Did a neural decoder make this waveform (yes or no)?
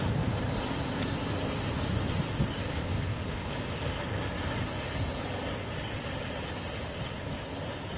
no